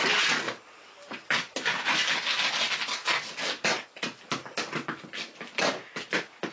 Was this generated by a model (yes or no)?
no